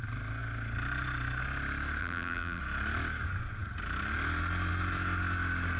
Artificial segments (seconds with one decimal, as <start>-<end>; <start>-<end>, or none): 2.0-2.6